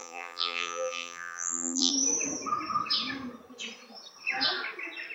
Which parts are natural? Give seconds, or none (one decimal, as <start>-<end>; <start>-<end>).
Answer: 1.9-5.1